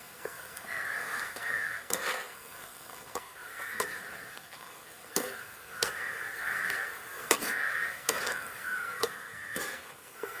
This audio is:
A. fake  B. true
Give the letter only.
A